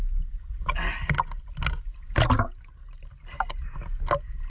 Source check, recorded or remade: recorded